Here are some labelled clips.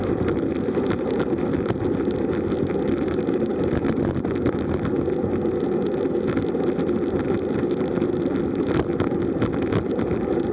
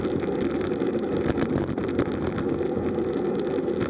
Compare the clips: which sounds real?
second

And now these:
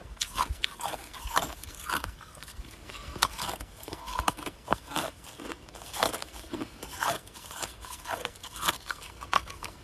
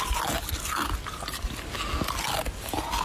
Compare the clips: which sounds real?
second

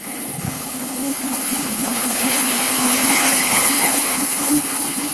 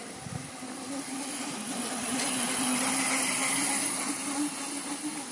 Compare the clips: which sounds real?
second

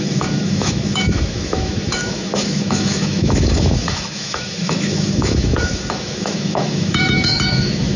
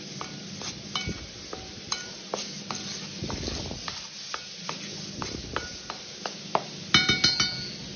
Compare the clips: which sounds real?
second